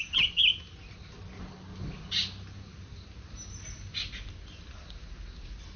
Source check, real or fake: real